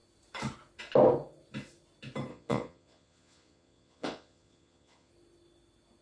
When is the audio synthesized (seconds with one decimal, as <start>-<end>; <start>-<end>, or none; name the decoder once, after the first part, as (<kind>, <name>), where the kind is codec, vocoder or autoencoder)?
2.3-5.1 (vocoder, Vocos)